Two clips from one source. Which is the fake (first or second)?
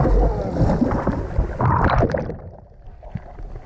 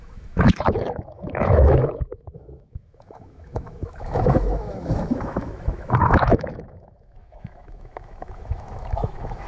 second